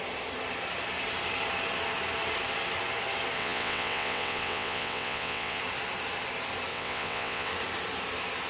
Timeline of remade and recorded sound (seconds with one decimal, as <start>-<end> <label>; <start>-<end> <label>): 0.0-3.4 recorded; 3.4-5.6 remade; 5.6-6.7 recorded; 6.7-7.5 remade; 7.5-8.5 recorded

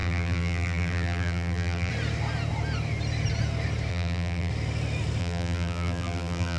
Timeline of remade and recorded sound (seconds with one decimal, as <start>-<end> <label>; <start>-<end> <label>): 0.0-1.9 remade; 1.9-3.9 recorded; 3.9-4.5 remade; 4.5-5.2 recorded; 5.2-6.6 remade

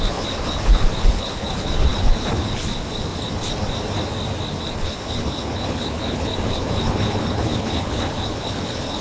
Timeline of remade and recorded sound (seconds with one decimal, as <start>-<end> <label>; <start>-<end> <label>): 0.0-3.1 remade; 3.1-4.6 recorded; 4.6-9.0 remade

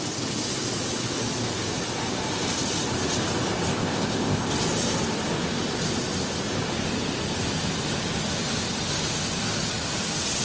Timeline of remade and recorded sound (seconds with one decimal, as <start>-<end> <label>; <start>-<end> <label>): 0.0-3.7 recorded; 3.7-4.5 remade; 4.5-10.4 recorded